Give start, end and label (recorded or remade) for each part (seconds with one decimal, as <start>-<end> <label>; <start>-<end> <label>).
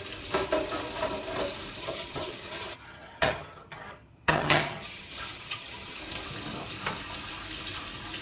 0.0-1.8 recorded; 1.8-6.0 remade; 6.0-8.2 recorded